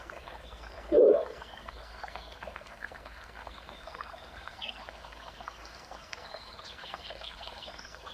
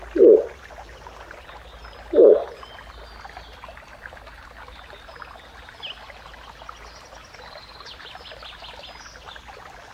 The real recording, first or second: second